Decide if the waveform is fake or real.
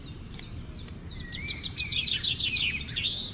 fake